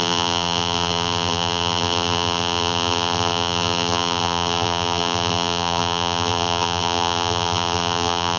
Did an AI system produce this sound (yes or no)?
yes